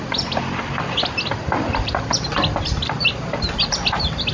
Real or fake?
real